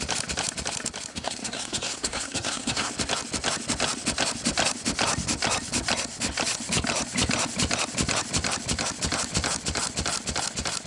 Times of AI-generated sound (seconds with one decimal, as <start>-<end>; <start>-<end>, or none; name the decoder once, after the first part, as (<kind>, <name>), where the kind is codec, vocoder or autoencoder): 1.1-2.9 (codec, SNAC)